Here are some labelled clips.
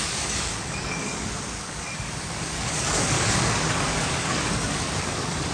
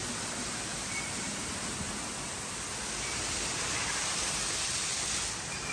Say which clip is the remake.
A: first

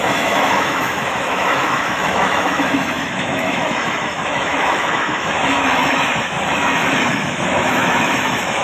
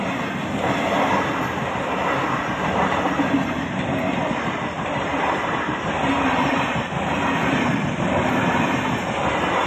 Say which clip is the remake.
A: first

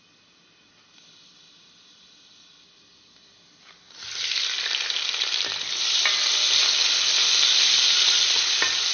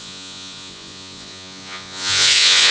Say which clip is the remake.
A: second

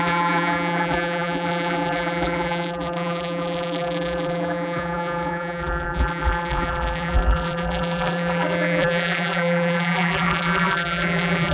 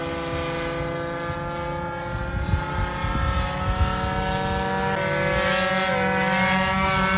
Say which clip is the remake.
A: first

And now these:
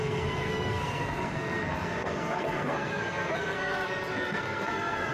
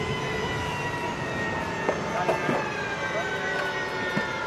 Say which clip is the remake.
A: first